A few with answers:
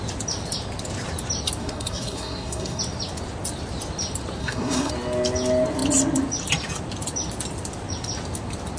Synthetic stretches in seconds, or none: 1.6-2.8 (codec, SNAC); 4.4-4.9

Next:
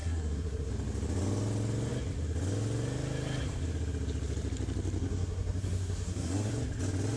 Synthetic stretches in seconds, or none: 0.0-0.7 (codec, SNAC); 5.0-6.5

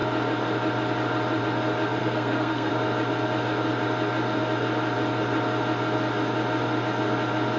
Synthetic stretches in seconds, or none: 2.0-2.7 (codec, SNAC)